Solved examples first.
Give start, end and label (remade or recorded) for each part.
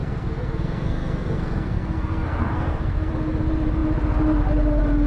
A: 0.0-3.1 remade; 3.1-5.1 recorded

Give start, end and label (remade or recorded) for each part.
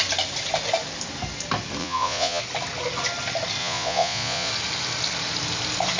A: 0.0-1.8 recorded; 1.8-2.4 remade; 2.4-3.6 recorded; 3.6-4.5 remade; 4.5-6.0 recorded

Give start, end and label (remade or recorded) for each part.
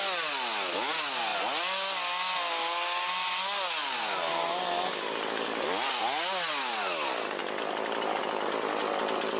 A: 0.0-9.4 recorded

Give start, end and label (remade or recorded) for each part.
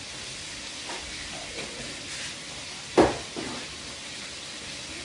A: 0.0-5.0 recorded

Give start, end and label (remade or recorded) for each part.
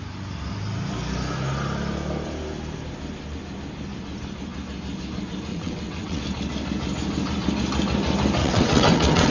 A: 0.0-5.5 recorded; 5.5-6.2 remade; 6.2-8.4 recorded; 8.4-9.3 remade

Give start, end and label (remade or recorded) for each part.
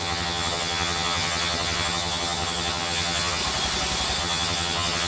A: 0.0-3.4 remade; 3.4-4.2 recorded; 4.2-5.1 remade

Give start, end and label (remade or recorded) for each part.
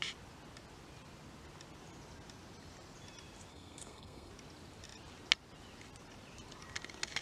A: 0.0-3.5 recorded; 3.5-4.3 remade; 4.3-7.2 recorded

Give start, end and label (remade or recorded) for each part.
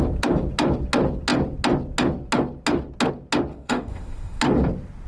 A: 0.0-3.5 recorded; 3.5-4.4 remade; 4.4-5.1 recorded